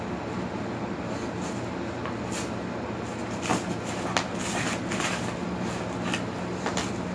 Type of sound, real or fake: real